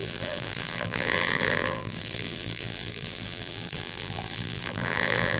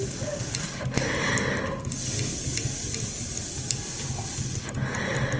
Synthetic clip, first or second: first